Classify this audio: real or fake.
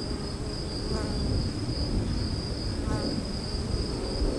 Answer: real